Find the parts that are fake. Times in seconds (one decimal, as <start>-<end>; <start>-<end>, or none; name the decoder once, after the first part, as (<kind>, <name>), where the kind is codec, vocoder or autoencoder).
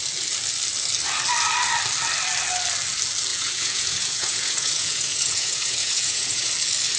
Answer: 3.3-6.5 (vocoder, Vocos)